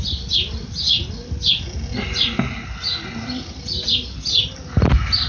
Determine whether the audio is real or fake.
real